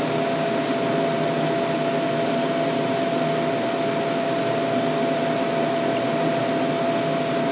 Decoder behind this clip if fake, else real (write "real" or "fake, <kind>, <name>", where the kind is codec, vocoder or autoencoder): real